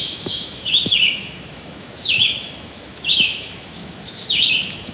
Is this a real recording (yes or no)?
no